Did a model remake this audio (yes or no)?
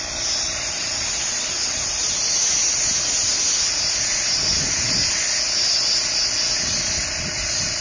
no